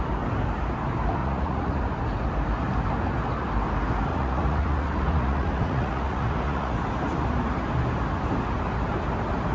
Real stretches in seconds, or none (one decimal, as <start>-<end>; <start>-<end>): 0.0-1.2; 1.8-4.1; 6.8-9.5